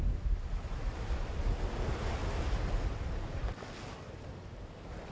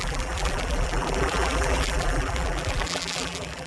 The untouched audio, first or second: first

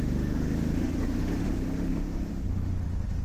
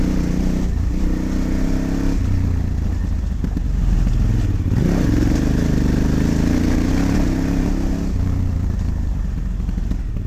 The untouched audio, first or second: second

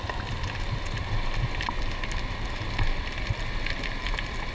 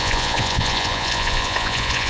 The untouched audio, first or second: first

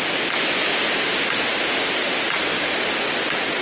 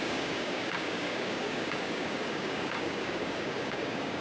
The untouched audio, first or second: first